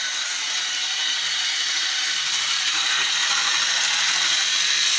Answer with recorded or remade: remade